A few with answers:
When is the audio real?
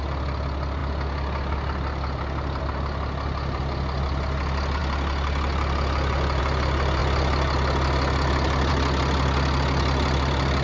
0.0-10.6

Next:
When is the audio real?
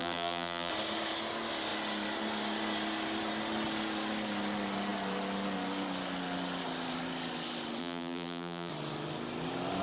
0.7-7.8; 8.7-9.8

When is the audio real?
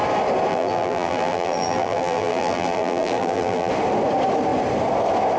0.0-0.5; 3.7-5.4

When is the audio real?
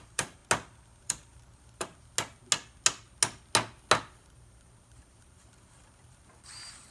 0.4-1.0; 1.9-4.1